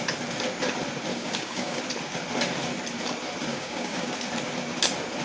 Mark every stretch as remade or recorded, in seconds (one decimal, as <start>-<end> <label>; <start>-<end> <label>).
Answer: 0.0-1.1 recorded; 1.1-1.8 remade; 1.8-3.5 recorded; 3.5-4.1 remade; 4.1-5.2 recorded